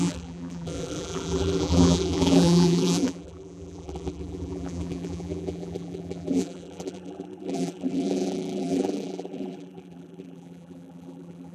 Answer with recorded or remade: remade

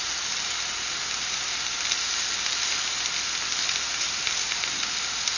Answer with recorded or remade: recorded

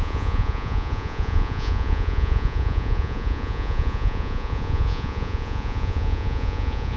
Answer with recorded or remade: remade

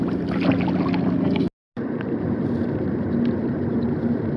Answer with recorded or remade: recorded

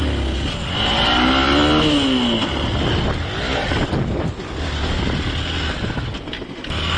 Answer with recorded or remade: recorded